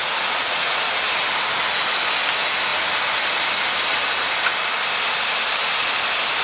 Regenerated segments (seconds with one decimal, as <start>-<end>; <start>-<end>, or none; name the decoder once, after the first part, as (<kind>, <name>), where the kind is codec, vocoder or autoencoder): 0.0-0.9 (vocoder, Vocos)